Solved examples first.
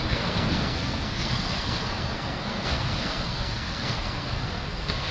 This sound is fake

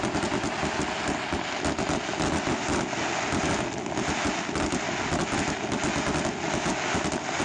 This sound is real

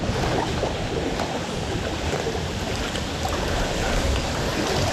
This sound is real